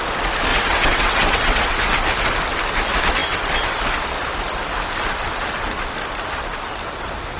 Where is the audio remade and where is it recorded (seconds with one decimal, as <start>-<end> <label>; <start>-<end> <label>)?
0.0-0.5 recorded; 0.5-1.7 remade; 1.7-7.4 recorded